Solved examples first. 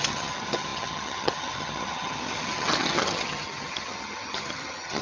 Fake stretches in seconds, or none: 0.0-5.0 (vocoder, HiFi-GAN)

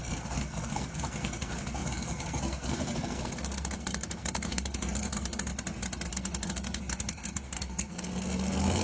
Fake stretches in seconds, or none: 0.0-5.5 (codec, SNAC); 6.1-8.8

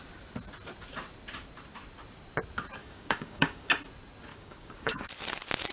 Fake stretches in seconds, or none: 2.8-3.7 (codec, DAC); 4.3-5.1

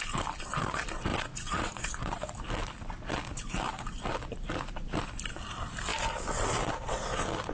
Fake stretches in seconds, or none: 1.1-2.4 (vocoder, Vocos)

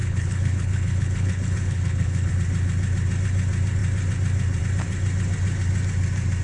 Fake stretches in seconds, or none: 0.0-2.3 (codec, HILCodec)